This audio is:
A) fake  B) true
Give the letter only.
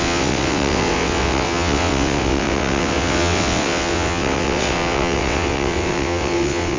A